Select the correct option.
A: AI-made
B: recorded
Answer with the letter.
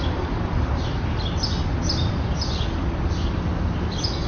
B